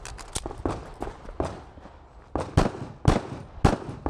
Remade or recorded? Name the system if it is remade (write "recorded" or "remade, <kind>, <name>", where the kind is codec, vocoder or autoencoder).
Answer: recorded